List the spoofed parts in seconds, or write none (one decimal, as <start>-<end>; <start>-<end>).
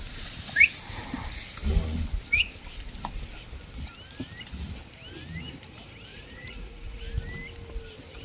6.1-7.0